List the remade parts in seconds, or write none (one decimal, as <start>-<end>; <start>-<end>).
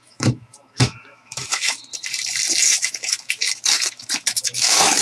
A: 0.0-1.9; 2.6-5.0